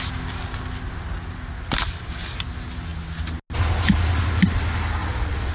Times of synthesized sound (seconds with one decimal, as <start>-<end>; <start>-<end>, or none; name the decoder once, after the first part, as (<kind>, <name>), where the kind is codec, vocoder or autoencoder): 5.0-5.5 (vocoder, Vocos)